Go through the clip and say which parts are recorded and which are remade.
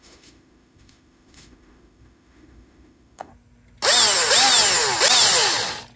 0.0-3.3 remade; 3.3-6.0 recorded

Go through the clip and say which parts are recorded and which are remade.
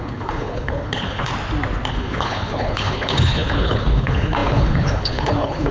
0.0-1.3 remade; 1.3-1.9 recorded; 1.9-5.7 remade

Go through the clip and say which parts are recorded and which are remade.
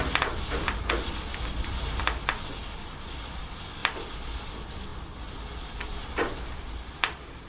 0.0-2.6 recorded; 2.6-3.4 remade; 3.4-3.8 recorded; 3.8-4.5 remade; 4.5-4.9 recorded; 4.9-6.0 remade; 6.0-7.5 recorded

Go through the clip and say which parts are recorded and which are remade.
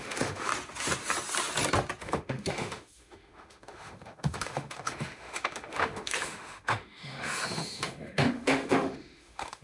0.0-0.5 remade; 0.5-2.0 recorded; 2.0-9.6 remade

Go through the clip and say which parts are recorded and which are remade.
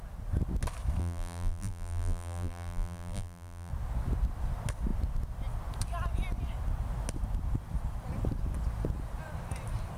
0.0-1.0 recorded; 1.0-3.7 remade; 3.7-10.0 recorded